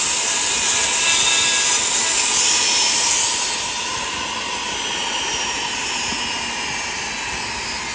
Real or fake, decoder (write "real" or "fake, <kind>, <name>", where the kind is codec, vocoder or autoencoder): real